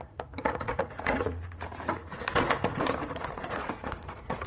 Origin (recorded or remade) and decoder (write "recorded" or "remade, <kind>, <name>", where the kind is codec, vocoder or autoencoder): remade, vocoder, Vocos